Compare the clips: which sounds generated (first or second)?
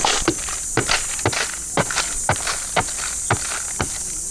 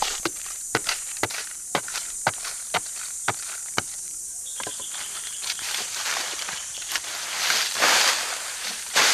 second